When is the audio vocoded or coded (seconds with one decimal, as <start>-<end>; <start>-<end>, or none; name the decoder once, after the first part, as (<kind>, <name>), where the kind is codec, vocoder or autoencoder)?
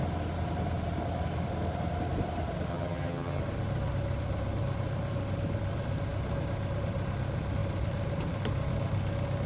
2.7-3.4 (vocoder, HiFi-GAN)